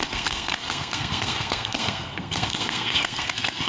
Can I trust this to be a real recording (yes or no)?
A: no